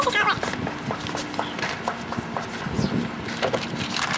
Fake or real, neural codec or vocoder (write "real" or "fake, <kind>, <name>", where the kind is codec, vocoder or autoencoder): real